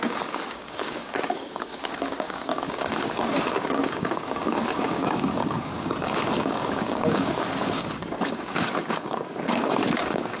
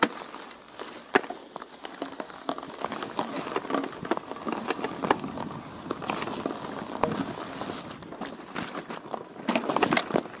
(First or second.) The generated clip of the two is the first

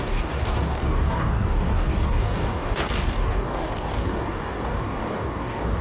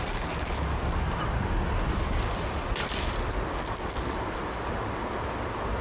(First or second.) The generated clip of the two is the first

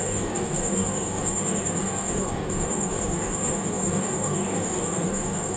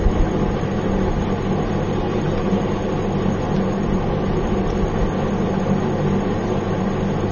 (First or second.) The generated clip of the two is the first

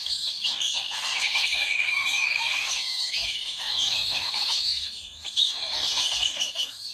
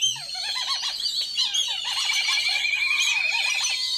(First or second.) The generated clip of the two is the first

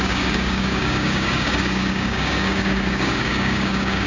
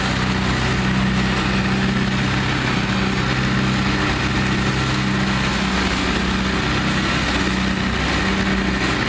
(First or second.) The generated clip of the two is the first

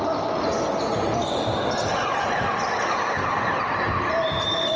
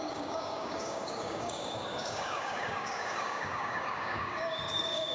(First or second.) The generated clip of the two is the second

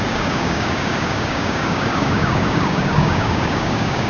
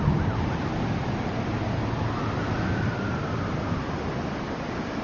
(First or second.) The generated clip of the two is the first